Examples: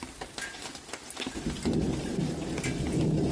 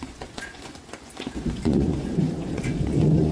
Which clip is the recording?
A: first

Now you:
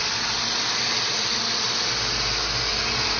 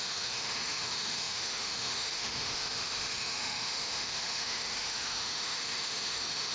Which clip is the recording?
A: first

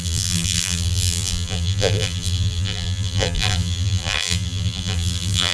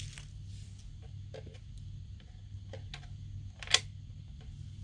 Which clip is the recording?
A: second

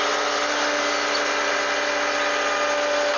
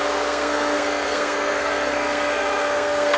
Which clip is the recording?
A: first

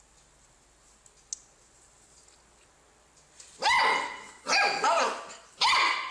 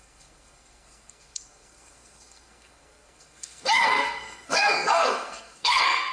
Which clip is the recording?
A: first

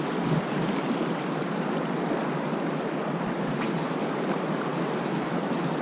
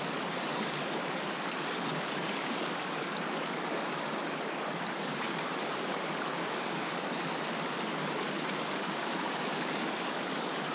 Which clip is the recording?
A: first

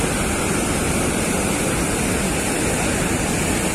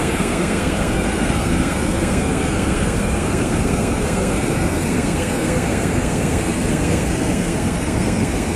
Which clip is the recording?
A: first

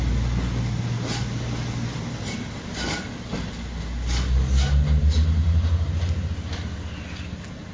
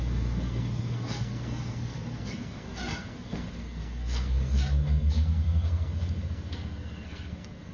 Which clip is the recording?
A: first